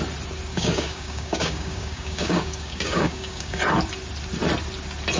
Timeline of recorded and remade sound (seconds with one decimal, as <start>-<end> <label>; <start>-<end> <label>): 0.0-0.5 recorded; 0.5-3.6 remade; 3.6-5.2 recorded